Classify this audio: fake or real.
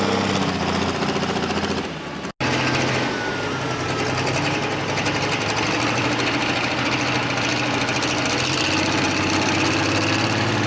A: real